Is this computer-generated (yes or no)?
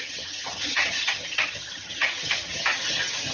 yes